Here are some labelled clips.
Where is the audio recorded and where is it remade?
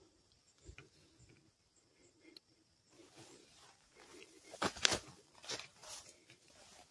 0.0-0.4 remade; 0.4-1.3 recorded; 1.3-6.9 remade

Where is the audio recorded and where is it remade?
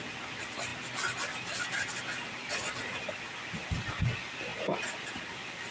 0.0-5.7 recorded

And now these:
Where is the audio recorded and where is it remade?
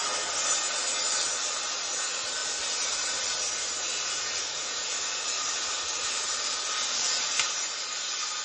0.0-1.1 recorded; 1.1-8.4 remade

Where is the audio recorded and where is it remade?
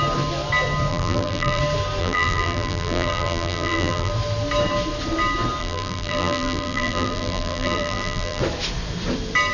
0.0-0.9 recorded; 0.9-1.6 remade; 1.6-2.0 recorded; 2.0-4.1 remade; 4.1-5.6 recorded; 5.6-8.4 remade; 8.4-9.5 recorded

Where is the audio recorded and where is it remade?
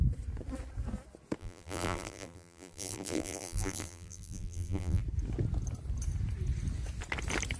0.0-1.4 recorded; 1.4-5.0 remade; 5.0-7.6 recorded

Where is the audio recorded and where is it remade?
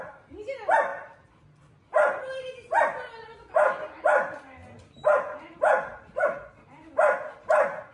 0.0-0.9 recorded; 0.9-2.2 remade; 2.2-7.9 recorded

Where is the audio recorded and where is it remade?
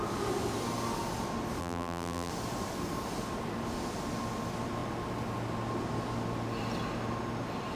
0.0-1.6 recorded; 1.6-2.3 remade; 2.3-7.8 recorded